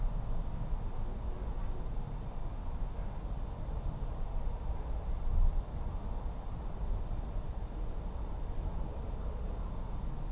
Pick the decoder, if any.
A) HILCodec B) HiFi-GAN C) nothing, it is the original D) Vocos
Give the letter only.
C